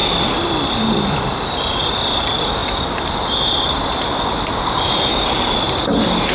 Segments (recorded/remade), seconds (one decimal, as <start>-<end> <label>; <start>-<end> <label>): 0.0-6.3 recorded